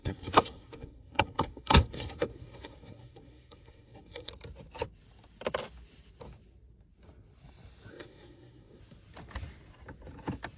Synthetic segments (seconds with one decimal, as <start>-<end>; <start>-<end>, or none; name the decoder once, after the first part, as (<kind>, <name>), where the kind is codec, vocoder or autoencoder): 0.0-4.3 (codec, SNAC); 7.9-8.8